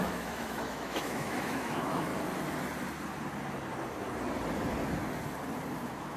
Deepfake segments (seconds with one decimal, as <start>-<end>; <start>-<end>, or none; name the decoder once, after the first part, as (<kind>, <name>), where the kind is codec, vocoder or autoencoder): 0.0-2.1 (autoencoder, DAC-VAE); 5.8-6.2